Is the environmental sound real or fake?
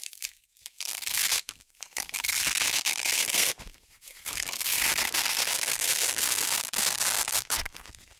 fake